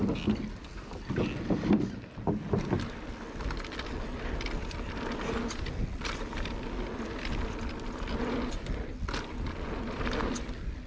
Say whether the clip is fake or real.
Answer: real